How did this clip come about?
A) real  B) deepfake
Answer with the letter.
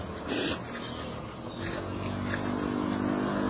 A